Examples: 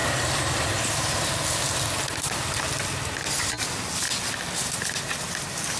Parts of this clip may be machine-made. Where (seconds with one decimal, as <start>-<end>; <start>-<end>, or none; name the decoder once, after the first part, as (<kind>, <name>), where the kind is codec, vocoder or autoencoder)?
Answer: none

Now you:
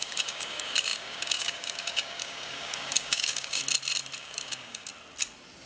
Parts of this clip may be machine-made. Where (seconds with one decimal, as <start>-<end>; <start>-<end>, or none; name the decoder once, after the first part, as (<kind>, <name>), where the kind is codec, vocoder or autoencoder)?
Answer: 0.0-3.6 (codec, DAC); 4.2-4.9

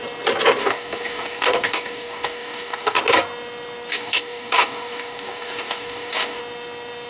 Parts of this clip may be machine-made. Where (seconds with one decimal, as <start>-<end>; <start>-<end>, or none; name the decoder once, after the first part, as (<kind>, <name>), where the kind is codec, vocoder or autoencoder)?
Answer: 0.6-3.0 (codec, DAC); 3.9-6.4

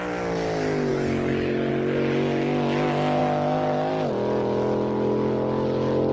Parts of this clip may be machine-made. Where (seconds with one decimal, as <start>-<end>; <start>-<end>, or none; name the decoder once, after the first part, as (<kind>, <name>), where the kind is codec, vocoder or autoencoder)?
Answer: 0.9-1.7 (codec, DAC); 3.2-3.9

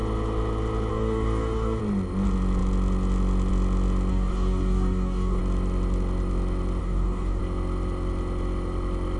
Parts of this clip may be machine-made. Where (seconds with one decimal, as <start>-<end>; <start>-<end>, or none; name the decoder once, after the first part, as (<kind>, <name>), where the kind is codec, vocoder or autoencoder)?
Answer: 0.9-1.8 (codec, DAC); 4.1-5.4; 6.8-7.4

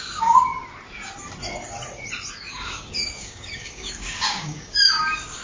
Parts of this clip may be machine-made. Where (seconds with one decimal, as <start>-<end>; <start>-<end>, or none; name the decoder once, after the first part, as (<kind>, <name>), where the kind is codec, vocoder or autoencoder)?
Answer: 0.0-0.5 (codec, DAC); 2.5-5.4

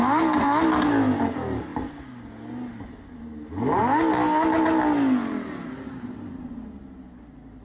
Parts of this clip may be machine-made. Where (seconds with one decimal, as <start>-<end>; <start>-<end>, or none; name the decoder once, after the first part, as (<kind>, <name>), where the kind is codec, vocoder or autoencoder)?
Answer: none

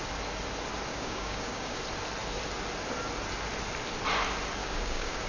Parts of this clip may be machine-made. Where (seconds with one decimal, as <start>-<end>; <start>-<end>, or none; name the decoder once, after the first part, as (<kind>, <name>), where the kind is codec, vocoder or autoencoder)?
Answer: 0.9-1.8 (codec, DAC); 4.6-5.3